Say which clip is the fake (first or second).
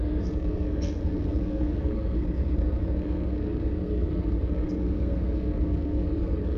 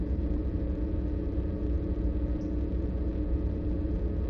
first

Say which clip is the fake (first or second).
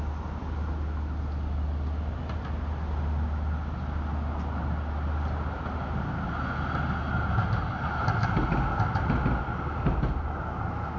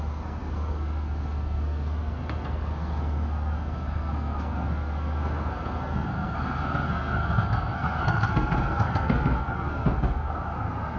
second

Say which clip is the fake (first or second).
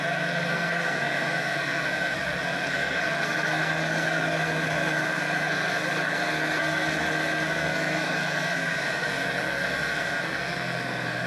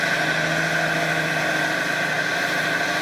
first